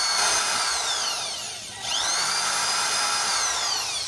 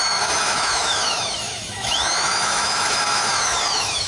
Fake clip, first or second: second